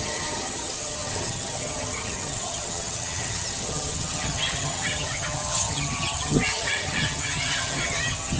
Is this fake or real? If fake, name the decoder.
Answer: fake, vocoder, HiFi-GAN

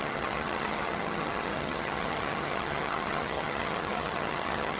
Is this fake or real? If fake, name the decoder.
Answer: fake, vocoder, HiFi-GAN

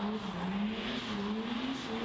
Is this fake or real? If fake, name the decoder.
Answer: real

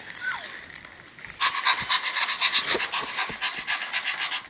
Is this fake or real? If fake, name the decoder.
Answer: real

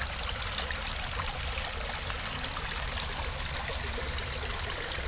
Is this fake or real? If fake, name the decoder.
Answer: real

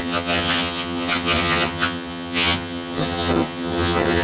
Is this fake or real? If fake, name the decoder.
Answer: fake, vocoder, HiFi-GAN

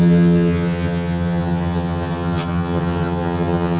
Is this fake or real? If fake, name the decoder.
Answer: fake, vocoder, HiFi-GAN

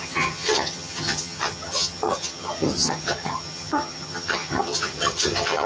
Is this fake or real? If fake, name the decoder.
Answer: fake, vocoder, HiFi-GAN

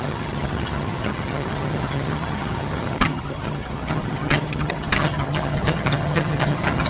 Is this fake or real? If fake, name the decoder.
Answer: fake, vocoder, HiFi-GAN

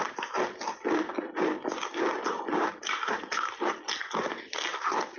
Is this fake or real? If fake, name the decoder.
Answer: real